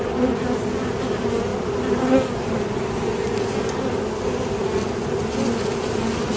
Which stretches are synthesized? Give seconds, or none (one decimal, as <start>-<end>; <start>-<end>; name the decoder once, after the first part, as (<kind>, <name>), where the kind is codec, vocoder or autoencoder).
none